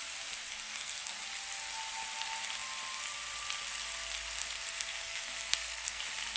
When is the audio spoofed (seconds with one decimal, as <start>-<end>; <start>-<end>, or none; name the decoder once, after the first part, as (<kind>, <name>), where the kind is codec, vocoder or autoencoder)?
0.4-1.2 (codec, SNAC); 4.4-6.0